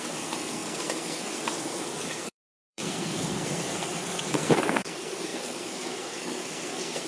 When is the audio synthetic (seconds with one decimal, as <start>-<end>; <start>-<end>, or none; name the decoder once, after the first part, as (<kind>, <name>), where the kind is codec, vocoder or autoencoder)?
0.0-7.1 (codec, SNAC)